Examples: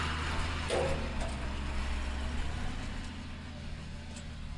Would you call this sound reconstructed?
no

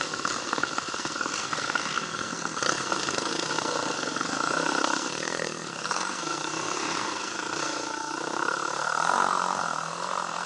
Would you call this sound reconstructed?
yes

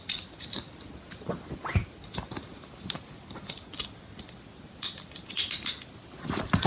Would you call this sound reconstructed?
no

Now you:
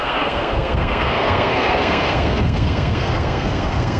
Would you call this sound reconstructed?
yes